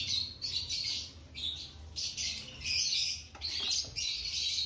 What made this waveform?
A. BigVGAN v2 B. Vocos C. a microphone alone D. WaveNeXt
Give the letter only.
C